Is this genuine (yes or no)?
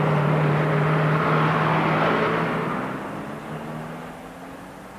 yes